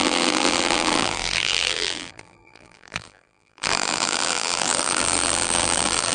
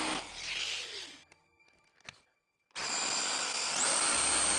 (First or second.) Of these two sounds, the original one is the second